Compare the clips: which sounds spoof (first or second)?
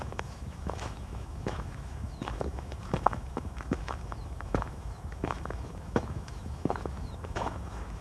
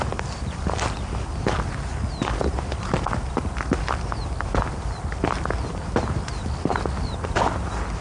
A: first